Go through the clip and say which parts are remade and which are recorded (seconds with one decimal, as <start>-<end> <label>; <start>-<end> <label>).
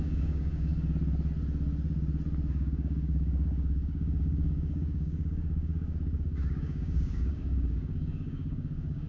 0.0-0.7 remade; 0.7-2.5 recorded; 2.5-9.1 remade